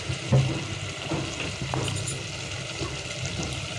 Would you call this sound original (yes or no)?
yes